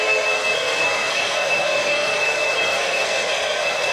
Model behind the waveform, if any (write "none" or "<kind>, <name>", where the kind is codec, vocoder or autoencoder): codec, SNAC